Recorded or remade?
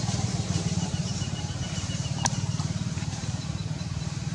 remade